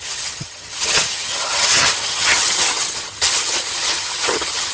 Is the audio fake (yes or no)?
yes